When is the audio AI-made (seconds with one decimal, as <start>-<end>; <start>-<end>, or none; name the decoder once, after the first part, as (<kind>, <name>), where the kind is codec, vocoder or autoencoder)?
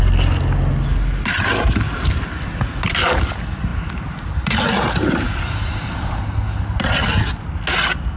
none